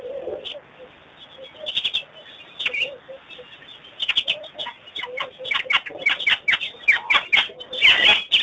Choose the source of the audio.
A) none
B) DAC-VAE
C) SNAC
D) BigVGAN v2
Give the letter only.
A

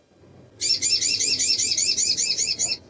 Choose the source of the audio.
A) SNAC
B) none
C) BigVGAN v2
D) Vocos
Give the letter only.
B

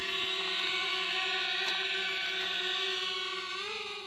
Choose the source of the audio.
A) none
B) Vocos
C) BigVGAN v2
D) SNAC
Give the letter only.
C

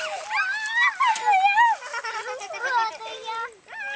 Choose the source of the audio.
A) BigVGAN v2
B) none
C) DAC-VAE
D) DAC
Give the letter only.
B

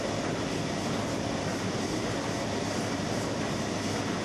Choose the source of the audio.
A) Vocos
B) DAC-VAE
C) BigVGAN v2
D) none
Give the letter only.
D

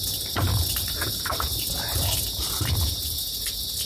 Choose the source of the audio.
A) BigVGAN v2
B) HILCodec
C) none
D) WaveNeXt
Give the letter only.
A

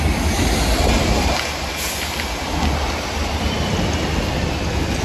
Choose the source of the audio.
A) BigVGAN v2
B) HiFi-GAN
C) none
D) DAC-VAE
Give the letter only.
C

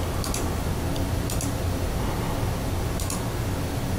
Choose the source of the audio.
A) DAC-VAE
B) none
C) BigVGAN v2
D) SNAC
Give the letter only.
B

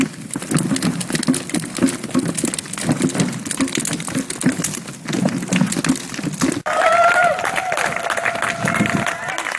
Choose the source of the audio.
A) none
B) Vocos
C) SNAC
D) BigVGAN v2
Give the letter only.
A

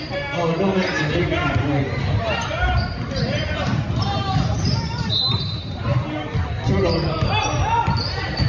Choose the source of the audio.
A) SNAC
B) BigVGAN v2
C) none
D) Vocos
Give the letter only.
B